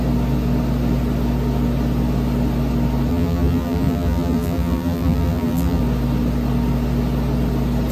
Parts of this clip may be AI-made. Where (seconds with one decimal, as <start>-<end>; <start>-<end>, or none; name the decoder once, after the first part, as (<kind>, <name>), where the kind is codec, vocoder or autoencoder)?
3.1-5.8 (vocoder, BigVGAN v2)